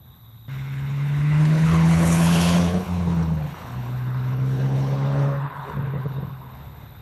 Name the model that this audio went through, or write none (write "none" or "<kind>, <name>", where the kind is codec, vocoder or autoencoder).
codec, HILCodec